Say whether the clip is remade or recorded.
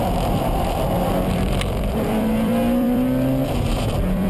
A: remade